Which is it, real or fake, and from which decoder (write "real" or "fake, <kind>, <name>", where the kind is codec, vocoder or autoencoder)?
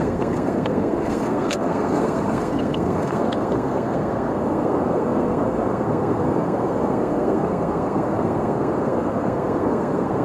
fake, codec, SNAC